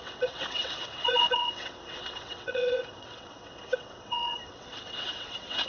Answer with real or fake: fake